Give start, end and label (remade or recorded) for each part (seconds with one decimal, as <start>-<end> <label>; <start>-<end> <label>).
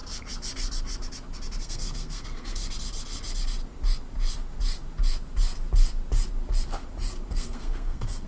0.0-1.6 recorded; 1.6-2.6 remade; 2.6-7.3 recorded; 7.3-8.3 remade